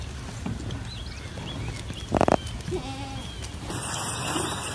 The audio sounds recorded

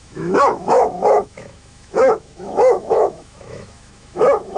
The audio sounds remade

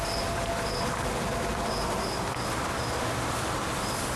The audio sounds remade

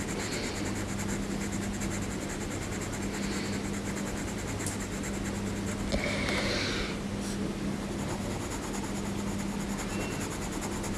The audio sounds recorded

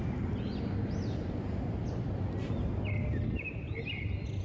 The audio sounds recorded